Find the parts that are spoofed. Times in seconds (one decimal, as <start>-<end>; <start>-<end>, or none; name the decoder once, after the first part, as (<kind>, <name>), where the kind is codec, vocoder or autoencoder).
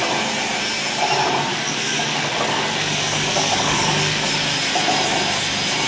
1.5-4.3 (codec, DAC)